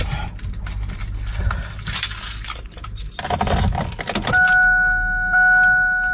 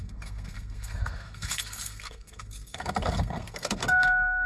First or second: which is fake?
second